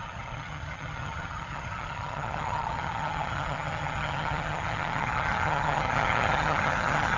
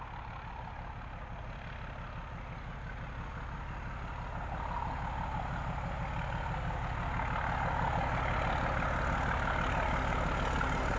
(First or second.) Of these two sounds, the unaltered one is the second